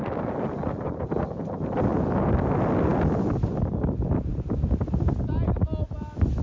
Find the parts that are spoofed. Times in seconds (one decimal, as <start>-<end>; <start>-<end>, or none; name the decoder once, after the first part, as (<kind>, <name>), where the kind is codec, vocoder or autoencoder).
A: none